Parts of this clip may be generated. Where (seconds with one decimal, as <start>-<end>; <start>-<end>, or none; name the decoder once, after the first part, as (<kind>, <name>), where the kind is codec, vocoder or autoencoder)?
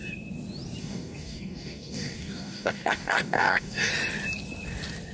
0.8-3.9 (codec, DAC)